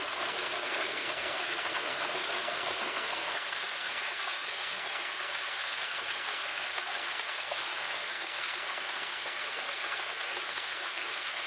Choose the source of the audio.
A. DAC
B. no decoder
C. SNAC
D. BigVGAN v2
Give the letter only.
C